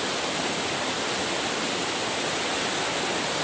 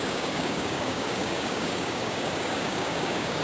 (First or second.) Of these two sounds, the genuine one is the first